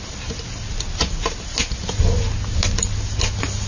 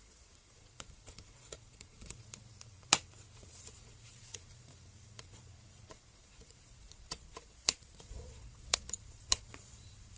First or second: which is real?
first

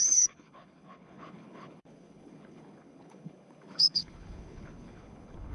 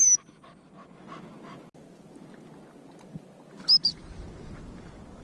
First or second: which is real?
second